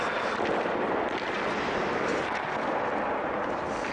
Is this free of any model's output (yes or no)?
yes